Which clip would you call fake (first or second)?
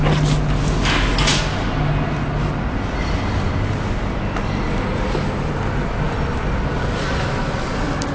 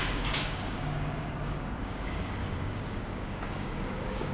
second